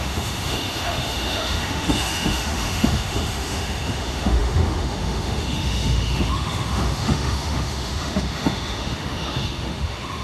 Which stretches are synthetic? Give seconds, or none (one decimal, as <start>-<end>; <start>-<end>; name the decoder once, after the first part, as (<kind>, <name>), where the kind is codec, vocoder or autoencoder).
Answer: 0.0-10.2 (autoencoder, DAC-VAE)